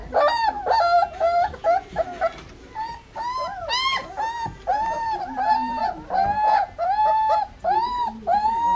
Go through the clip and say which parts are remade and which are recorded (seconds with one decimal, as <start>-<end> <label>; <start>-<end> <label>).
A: 0.0-4.7 recorded; 4.7-5.8 remade; 5.8-7.4 recorded; 7.4-8.8 remade